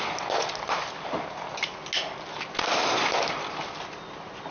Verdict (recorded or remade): recorded